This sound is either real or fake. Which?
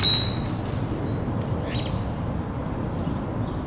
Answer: real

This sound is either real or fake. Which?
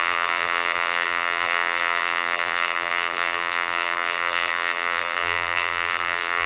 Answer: fake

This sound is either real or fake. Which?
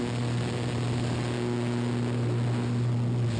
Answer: real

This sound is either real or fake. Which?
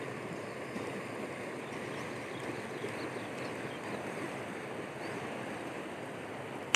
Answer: real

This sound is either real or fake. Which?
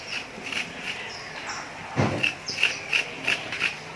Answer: real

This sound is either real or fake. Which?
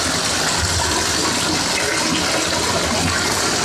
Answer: real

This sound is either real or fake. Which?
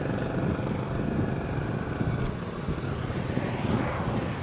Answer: real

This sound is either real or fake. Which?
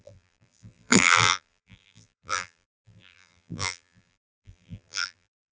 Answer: fake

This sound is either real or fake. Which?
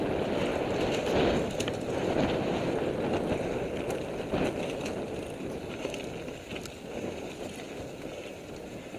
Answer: real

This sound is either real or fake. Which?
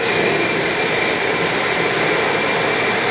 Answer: fake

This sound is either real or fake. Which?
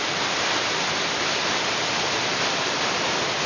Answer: fake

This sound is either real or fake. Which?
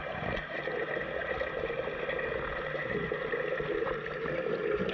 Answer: real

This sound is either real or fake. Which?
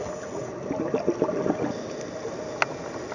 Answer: real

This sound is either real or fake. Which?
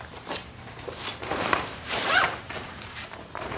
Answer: fake